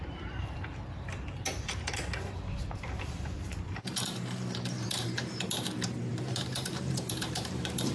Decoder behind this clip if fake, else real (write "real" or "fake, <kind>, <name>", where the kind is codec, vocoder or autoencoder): fake, vocoder, BigVGAN v2